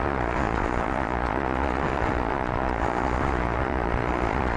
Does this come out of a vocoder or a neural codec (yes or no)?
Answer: yes